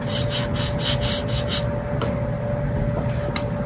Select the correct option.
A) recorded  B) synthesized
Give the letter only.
A